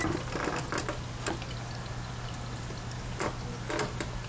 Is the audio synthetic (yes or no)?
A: no